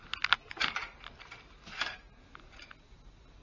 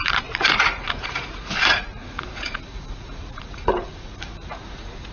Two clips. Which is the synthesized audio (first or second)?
second